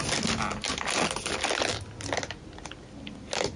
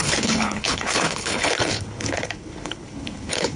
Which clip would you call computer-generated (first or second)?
second